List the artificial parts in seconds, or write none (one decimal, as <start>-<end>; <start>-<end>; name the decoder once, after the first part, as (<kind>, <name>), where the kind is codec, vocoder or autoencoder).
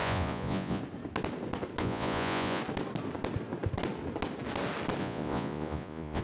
0.0-0.8 (vocoder, Vocos); 1.8-2.6; 5.0-6.2